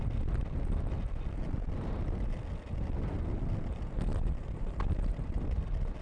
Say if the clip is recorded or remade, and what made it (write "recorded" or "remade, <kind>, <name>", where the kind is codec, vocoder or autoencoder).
recorded